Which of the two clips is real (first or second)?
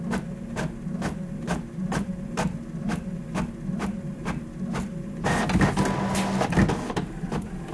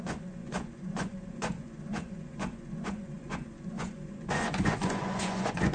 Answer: first